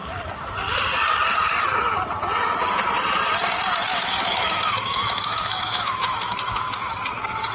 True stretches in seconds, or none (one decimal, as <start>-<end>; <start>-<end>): 0.0-3.9; 6.9-7.5